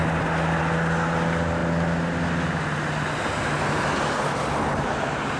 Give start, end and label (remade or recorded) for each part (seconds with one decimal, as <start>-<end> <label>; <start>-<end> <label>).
0.0-5.4 recorded